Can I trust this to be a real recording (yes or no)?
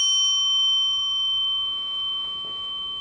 no